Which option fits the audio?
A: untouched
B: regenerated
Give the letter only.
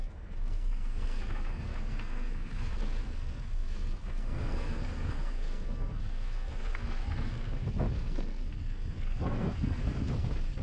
B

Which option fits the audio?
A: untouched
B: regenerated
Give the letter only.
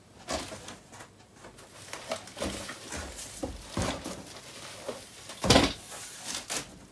A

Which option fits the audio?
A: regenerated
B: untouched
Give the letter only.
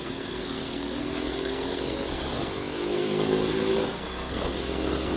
A